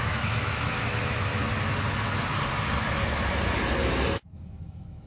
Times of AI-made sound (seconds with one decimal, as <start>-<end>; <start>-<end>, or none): 0.0-1.3; 4.2-5.1

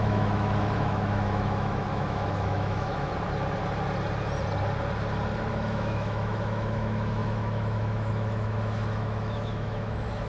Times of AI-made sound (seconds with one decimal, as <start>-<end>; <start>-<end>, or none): 0.0-3.1; 5.5-10.3